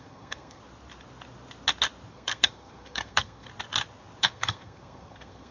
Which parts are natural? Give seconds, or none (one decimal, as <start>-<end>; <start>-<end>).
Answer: 0.6-2.1; 3.5-4.2